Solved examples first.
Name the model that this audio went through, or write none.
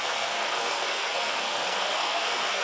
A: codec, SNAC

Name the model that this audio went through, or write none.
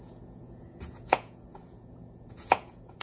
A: vocoder, Vocos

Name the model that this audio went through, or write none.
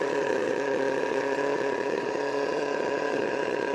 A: vocoder, Vocos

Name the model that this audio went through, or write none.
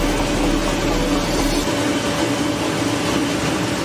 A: none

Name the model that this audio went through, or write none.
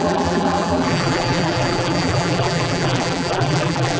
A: vocoder, BigVGAN v2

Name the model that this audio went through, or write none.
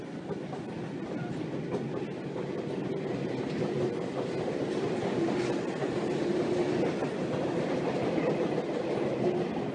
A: none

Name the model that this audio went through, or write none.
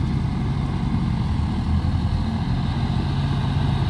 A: none